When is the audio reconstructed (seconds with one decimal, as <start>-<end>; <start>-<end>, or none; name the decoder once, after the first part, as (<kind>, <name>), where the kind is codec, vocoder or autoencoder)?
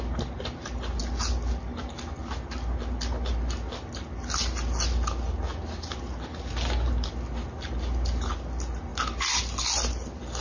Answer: none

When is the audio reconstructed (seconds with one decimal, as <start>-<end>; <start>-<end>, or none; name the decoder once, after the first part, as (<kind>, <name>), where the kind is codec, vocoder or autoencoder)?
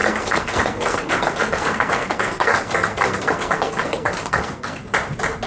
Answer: 0.0-4.8 (codec, SNAC)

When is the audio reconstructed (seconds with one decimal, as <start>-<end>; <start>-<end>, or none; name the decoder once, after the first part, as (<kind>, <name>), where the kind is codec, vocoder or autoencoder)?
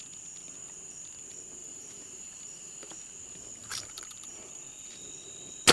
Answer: 1.6-2.9 (vocoder, BigVGAN v2); 3.6-4.9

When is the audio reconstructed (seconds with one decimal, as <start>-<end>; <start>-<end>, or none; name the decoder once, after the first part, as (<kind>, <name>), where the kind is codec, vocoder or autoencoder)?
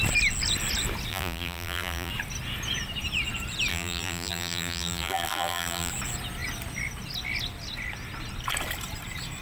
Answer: 1.1-2.1 (vocoder, BigVGAN v2); 3.7-5.9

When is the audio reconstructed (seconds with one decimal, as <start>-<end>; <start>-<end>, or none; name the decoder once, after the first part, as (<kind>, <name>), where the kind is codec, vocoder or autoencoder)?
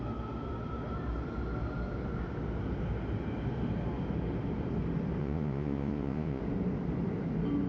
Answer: 5.2-6.4 (vocoder, Vocos)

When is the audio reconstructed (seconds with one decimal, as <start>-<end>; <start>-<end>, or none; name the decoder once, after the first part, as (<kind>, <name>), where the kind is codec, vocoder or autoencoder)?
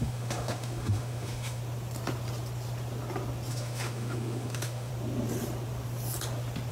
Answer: 0.0-1.6 (autoencoder, DAC-VAE); 3.5-4.9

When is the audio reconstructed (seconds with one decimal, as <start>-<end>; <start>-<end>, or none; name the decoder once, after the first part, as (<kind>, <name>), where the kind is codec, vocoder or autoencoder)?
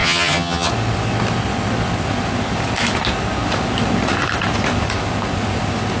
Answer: 0.0-0.7 (vocoder, HiFi-GAN)